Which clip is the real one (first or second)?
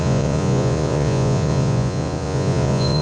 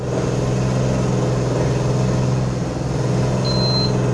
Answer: second